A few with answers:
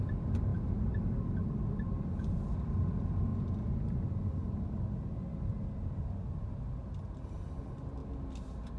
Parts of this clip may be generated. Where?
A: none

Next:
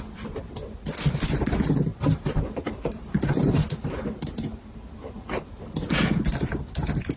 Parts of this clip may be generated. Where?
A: 1.9-5.6

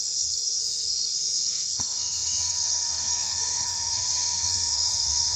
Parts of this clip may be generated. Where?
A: 0.0-5.4

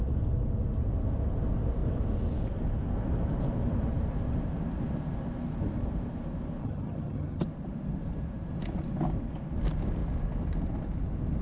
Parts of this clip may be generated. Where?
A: 6.6-7.4